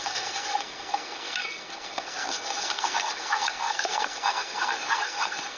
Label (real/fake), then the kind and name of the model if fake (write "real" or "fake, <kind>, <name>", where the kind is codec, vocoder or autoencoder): fake, codec, SNAC